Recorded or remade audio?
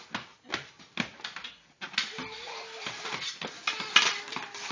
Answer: recorded